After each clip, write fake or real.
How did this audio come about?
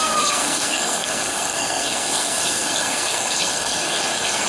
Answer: fake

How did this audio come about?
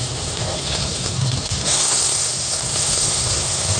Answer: fake